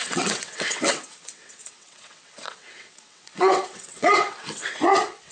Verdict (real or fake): fake